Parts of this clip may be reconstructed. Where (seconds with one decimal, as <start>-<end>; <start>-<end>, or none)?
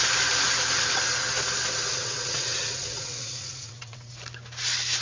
1.9-4.1